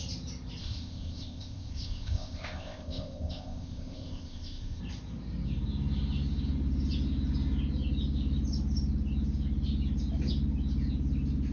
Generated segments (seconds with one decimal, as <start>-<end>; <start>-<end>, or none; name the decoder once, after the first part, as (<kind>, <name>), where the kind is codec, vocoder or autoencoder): 0.6-4.8 (codec, ZipCodec)